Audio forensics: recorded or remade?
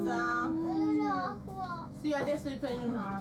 remade